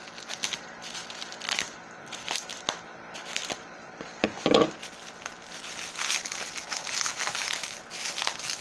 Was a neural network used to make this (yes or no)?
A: no